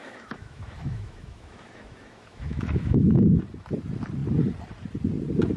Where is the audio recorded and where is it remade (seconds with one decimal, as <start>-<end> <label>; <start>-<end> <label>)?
0.0-3.4 remade; 3.4-5.6 recorded